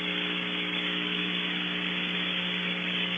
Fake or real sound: fake